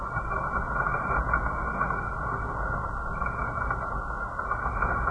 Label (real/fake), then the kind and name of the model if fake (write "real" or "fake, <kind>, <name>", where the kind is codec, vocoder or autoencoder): real